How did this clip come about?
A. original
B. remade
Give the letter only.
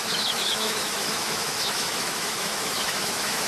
B